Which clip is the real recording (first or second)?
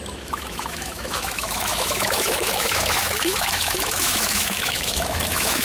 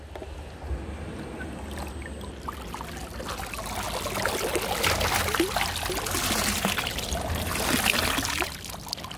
second